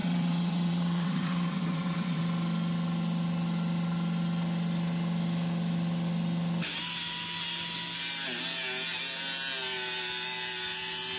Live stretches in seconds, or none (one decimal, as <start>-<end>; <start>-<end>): 2.2-11.2